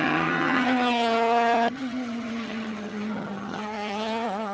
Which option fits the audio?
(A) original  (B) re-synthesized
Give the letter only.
B